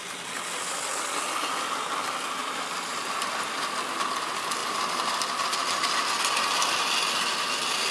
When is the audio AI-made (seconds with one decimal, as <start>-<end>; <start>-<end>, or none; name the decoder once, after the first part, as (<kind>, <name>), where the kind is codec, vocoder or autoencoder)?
2.4-3.7 (vocoder, BigVGAN v2); 4.6-5.9